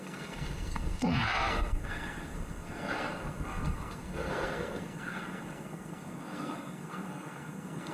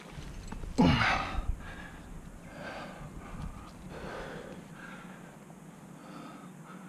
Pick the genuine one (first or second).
second